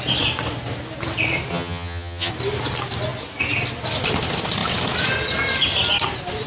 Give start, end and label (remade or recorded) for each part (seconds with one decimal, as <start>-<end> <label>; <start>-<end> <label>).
0.0-1.5 recorded; 1.5-2.3 remade; 2.3-6.5 recorded